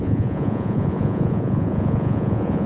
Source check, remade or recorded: remade